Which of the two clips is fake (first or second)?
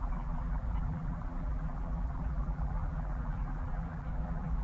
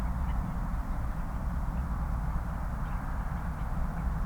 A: first